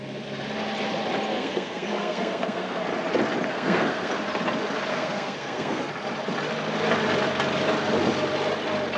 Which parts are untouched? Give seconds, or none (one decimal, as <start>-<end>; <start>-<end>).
0.0-1.3; 2.8-3.5; 4.1-4.9; 5.9-9.0